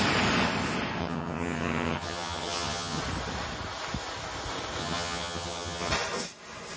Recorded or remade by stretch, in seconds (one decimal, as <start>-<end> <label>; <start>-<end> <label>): 0.0-1.0 recorded; 1.0-3.0 remade; 3.0-4.8 recorded; 4.8-5.9 remade; 5.9-6.8 recorded